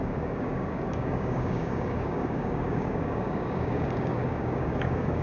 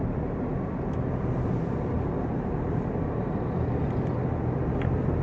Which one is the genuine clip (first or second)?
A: second